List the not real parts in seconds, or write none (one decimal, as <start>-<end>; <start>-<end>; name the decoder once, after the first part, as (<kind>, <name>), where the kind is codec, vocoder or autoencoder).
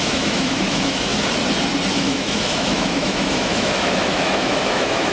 0.0-1.1 (autoencoder, DAC-VAE); 1.9-5.1